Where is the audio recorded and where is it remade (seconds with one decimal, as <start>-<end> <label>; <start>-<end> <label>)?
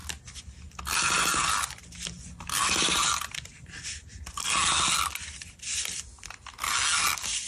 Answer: 0.0-2.6 recorded; 2.6-4.6 remade; 4.6-7.5 recorded